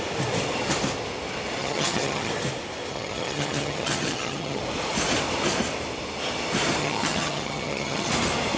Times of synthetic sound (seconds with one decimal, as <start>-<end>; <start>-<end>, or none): 1.6-2.3; 2.9-4.6; 6.8-8.1